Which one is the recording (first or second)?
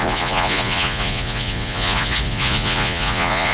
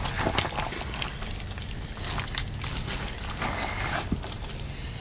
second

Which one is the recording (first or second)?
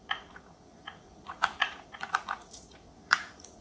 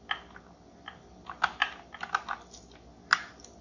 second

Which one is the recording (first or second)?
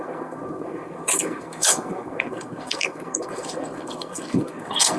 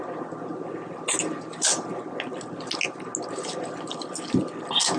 second